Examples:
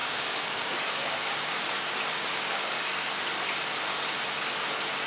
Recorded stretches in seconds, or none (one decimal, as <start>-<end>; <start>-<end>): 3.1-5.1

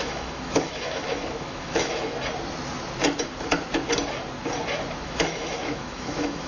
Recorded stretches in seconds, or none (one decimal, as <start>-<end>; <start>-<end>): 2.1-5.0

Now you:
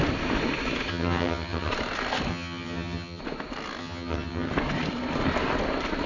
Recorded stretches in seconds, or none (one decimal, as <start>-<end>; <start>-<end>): 0.0-0.9; 1.7-2.3; 3.2-3.8; 4.5-6.1

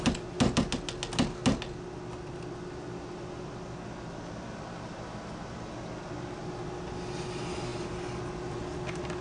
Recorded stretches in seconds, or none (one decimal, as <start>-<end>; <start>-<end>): 0.0-9.2

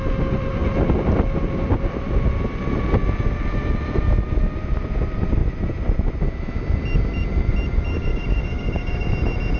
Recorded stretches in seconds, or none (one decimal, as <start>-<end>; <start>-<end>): 0.0-7.9; 9.1-9.6

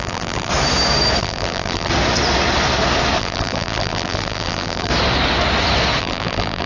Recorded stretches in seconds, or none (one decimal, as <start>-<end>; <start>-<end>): 0.5-1.2; 1.9-3.2; 4.9-6.0